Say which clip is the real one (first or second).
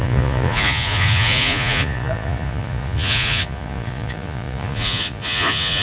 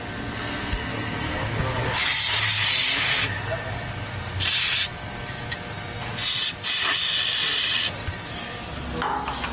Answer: second